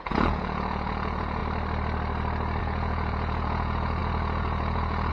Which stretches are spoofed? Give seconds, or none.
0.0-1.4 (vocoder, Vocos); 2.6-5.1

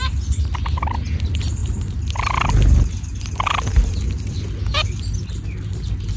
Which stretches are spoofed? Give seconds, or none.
none

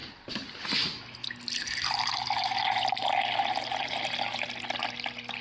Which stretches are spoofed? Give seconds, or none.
none

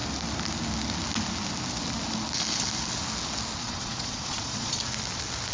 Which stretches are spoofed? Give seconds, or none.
3.6-4.8 (vocoder, Vocos)

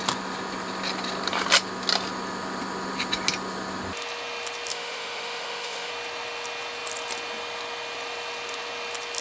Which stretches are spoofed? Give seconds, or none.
4.7-5.9 (autoencoder, DAC-VAE)